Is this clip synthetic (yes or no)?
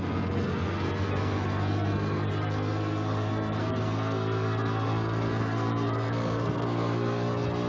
yes